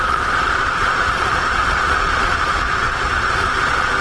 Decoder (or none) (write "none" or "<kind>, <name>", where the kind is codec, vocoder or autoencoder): vocoder, Vocos